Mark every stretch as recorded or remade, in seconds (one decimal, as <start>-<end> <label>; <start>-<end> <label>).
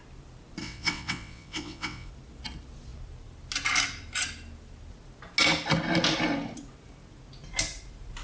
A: 0.0-0.6 recorded; 0.6-2.1 remade; 2.1-8.2 recorded